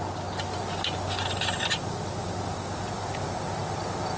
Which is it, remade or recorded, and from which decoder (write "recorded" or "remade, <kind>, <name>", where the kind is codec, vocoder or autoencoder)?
recorded